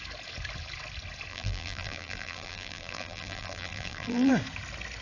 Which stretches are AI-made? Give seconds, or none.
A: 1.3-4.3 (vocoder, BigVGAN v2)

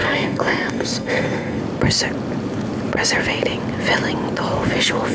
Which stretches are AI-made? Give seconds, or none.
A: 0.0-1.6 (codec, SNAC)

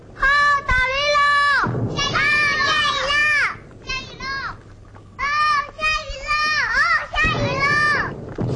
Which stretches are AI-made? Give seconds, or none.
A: none

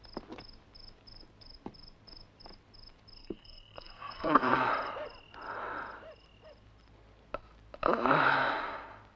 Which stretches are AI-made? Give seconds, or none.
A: 3.2-4.7 (codec, SNAC)